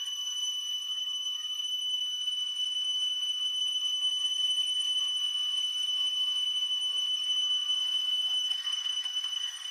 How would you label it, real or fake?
fake